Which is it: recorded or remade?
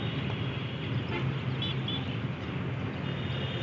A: recorded